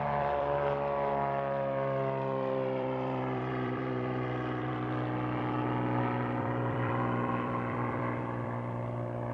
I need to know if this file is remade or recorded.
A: remade